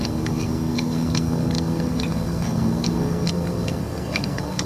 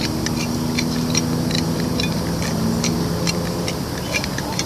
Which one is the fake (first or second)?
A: first